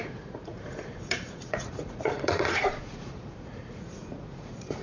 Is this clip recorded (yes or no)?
no